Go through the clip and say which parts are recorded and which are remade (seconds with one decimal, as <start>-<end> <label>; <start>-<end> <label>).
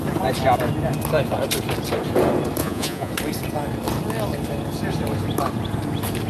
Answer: 0.0-2.6 recorded; 2.6-3.1 remade; 3.1-6.3 recorded